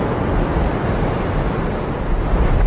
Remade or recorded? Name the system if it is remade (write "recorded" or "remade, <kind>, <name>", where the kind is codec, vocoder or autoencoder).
recorded